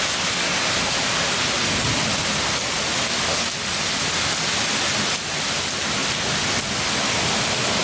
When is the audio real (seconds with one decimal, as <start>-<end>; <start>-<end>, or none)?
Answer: 0.0-7.8